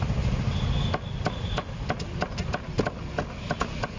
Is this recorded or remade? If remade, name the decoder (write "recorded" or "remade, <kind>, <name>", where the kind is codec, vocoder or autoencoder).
recorded